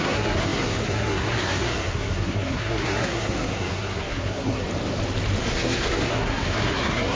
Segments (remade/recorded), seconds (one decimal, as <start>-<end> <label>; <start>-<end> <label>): 0.0-4.6 remade; 4.6-5.4 recorded; 5.4-7.2 remade